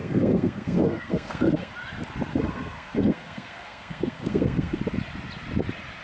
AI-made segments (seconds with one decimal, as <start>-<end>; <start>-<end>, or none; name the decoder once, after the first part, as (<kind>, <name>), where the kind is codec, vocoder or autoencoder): 0.0-1.7 (codec, SNAC); 2.3-4.8